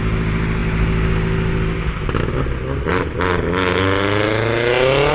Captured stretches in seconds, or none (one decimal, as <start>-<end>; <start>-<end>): 0.0-5.1